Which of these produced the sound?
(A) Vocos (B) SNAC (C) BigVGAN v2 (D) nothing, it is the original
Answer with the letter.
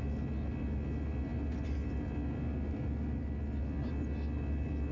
D